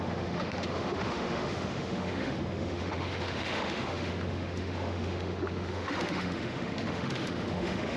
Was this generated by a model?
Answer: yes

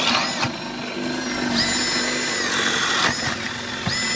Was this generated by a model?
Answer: no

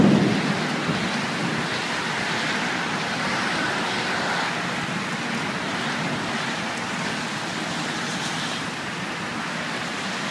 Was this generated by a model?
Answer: no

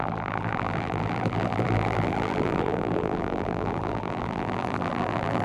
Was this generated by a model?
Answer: yes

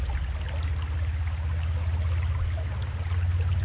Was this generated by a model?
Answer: no